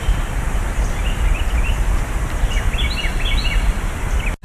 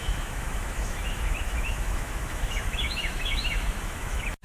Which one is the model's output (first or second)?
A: second